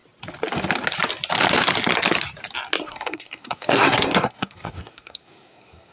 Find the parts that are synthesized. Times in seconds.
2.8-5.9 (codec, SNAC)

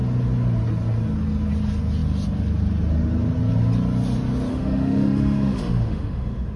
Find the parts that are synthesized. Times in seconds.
4.5-6.6 (autoencoder, DAC-VAE)

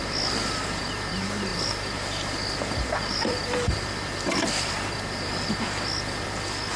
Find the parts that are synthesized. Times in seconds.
1.5-5.6 (vocoder, BigVGAN v2)

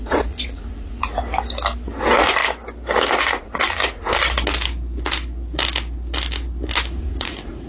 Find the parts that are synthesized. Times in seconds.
0.0-1.2 (vocoder, Vocos); 2.0-2.4; 3.3-4.1; 7.0-7.7

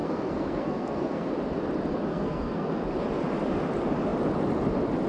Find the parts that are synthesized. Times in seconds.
0.0-1.3 (codec, SNAC); 2.1-2.9